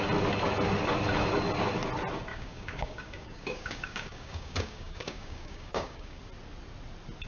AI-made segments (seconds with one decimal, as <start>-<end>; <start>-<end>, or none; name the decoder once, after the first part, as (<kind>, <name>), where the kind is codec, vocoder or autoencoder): 2.3-6.2 (codec, DAC)